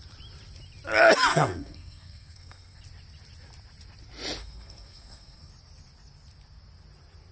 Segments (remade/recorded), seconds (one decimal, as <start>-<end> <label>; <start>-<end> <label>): 0.0-1.3 recorded; 1.3-2.8 remade; 2.8-4.4 recorded; 4.4-5.5 remade; 5.5-7.3 recorded